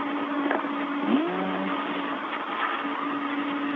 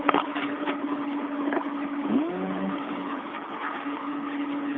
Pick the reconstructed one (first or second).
second